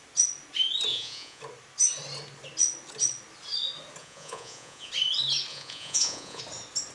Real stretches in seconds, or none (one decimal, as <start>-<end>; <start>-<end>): 0.0-0.9; 1.4-4.0; 4.9-5.5; 6.4-6.9